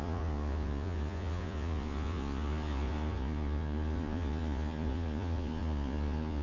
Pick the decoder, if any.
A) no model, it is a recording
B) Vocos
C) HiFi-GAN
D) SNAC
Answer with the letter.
B